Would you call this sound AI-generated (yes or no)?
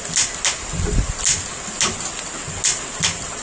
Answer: no